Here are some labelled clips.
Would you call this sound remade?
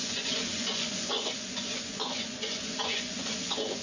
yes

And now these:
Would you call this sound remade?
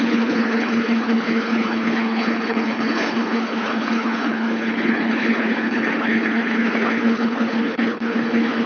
yes